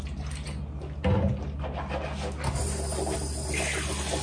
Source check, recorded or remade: recorded